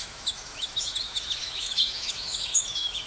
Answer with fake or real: fake